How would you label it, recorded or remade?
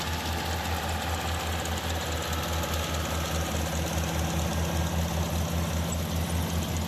recorded